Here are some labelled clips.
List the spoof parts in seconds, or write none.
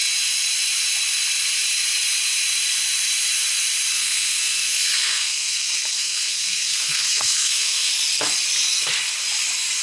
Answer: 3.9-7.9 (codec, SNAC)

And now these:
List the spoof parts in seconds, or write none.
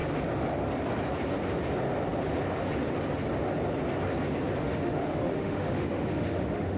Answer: 4.6-6.8 (autoencoder, DAC-VAE)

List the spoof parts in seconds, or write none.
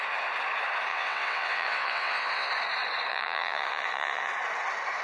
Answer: 0.9-2.5 (vocoder, WaveNeXt); 3.1-4.3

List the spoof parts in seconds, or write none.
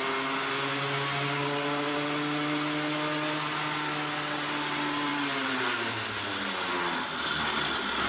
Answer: none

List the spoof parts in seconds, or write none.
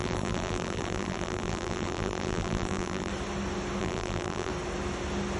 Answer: 0.0-3.1 (vocoder, BigVGAN v2); 3.8-4.5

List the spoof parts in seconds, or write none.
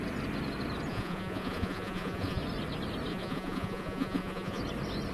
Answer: 0.9-2.4 (vocoder, Vocos); 3.1-4.6